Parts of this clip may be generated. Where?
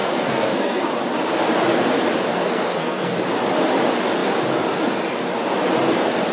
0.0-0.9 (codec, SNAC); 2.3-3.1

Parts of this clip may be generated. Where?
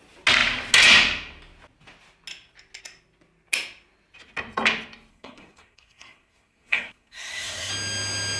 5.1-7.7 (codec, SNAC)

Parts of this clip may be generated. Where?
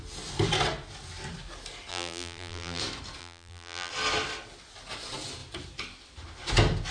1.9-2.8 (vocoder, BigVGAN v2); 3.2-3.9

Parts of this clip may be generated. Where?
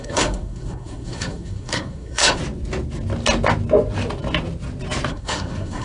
0.0-2.4 (codec, SNAC); 5.1-5.8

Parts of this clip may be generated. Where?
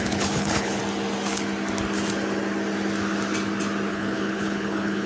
0.0-0.8 (codec, HILCodec); 3.9-5.1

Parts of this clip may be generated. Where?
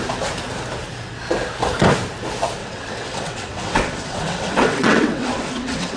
2.6-6.0 (vocoder, WaveNeXt)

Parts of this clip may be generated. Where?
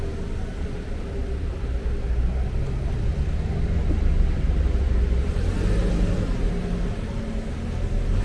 1.2-5.3 (vocoder, BigVGAN v2)